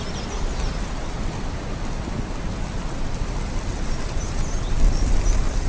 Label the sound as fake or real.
real